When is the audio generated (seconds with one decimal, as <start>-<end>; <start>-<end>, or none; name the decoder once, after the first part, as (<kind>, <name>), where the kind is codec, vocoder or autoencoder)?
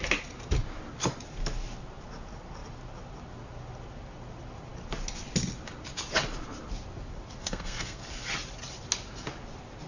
7.4-8.0 (codec, SNAC)